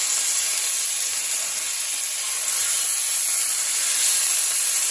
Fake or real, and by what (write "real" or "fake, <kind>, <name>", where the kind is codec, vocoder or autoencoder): real